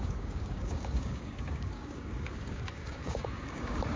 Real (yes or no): no